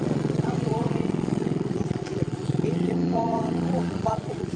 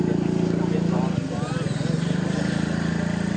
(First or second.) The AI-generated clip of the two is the first